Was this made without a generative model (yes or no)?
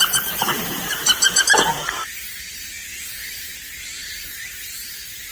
no